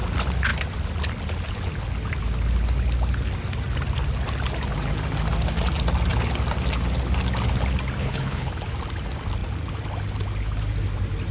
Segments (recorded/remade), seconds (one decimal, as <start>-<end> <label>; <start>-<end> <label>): 0.0-8.0 recorded; 8.0-8.5 remade; 8.5-11.3 recorded